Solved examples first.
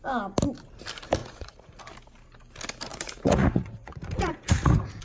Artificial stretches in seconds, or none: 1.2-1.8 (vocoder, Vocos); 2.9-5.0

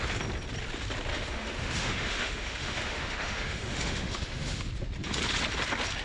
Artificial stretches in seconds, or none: 1.1-4.7 (autoencoder, DAC-VAE)

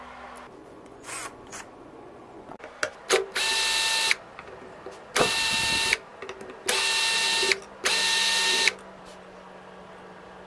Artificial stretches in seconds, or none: 0.6-2.6 (vocoder, Vocos)